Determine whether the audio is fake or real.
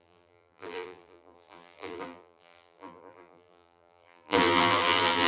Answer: fake